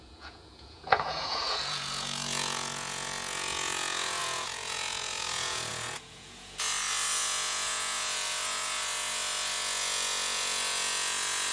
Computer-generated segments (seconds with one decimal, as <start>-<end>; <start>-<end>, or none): 0.0-11.5